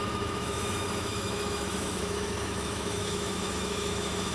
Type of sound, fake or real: fake